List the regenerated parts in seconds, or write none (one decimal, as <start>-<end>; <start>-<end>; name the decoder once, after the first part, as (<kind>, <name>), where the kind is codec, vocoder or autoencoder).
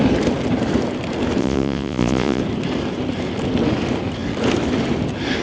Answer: 1.4-2.4 (vocoder, Vocos)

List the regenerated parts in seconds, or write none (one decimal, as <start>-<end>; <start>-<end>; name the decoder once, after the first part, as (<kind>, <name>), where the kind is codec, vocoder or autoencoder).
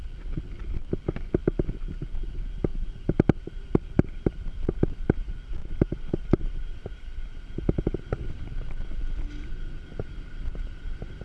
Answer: 2.7-4.8 (vocoder, BigVGAN v2); 5.6-9.5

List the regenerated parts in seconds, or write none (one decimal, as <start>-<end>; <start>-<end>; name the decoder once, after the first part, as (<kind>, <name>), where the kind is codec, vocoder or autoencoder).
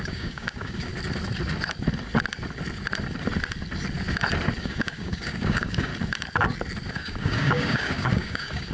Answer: 0.0-0.9 (codec, DAC); 4.6-5.9; 6.9-8.7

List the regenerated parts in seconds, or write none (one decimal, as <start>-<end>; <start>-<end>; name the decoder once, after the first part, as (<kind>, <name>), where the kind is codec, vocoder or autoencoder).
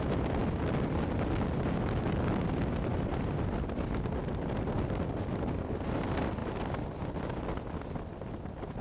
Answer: none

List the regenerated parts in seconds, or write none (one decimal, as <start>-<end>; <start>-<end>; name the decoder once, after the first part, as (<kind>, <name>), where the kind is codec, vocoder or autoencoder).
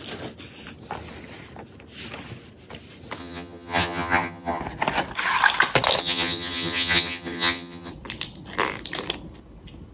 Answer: 3.2-4.6 (vocoder, HiFi-GAN); 6.0-7.9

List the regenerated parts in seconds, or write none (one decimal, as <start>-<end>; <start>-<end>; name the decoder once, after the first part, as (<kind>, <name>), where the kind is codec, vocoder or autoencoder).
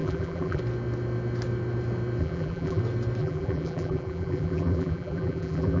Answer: 0.0-0.6 (vocoder, BigVGAN v2); 2.2-2.8; 3.2-5.8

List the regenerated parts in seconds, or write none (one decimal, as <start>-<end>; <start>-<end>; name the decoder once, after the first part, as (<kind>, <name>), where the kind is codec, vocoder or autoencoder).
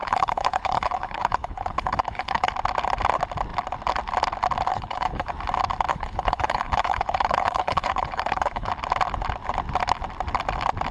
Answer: 0.0-2.5 (codec, HILCodec); 4.7-5.3; 5.9-8.7